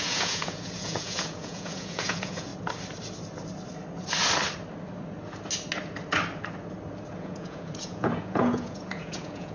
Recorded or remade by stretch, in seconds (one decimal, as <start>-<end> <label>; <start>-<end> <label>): 0.0-2.5 remade; 2.5-7.1 recorded; 7.1-9.5 remade